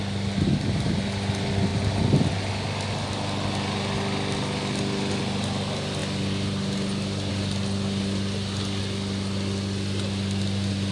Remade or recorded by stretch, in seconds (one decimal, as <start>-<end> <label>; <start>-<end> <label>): 0.0-10.9 recorded